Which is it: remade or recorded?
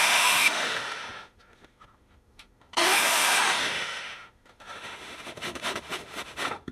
remade